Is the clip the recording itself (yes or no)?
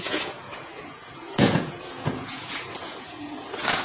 no